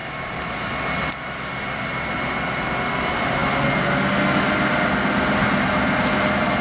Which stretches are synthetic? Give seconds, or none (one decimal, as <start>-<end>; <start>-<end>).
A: 0.0-0.7; 5.4-6.6

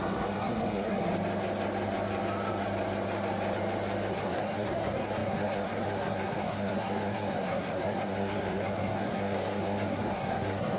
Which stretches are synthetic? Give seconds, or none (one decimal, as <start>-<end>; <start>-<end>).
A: 0.0-1.1; 4.1-10.8